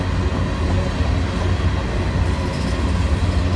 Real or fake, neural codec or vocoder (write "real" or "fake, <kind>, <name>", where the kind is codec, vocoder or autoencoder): real